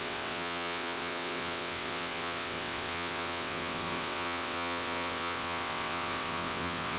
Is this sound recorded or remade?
remade